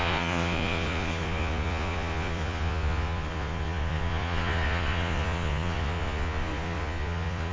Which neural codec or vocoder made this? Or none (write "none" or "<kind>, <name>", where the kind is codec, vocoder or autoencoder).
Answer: vocoder, Vocos